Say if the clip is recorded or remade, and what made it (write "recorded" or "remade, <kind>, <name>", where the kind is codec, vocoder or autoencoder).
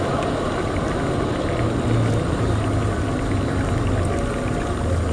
recorded